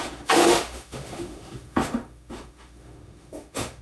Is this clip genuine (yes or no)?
no